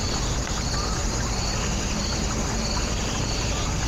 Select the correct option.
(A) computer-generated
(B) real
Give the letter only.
B